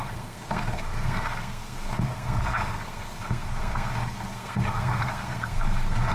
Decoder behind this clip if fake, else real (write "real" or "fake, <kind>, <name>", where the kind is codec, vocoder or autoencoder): fake, codec, SNAC